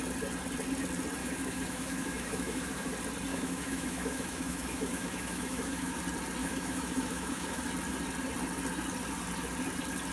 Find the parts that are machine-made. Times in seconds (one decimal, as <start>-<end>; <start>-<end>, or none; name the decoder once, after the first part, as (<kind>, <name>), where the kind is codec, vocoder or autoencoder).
1.2-2.9 (autoencoder, DAC-VAE); 3.3-6.0; 6.4-7.6